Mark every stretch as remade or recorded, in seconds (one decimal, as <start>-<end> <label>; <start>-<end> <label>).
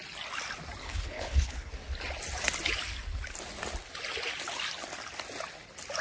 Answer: 0.0-0.8 recorded; 0.8-1.7 remade; 1.7-6.0 recorded